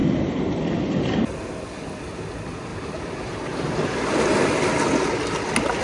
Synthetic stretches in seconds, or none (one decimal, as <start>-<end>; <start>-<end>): 0.0-0.6; 2.7-4.2